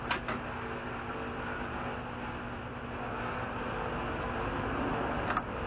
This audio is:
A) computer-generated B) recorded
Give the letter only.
B